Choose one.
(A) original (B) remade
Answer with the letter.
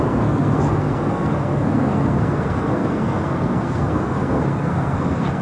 B